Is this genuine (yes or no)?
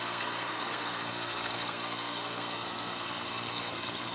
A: no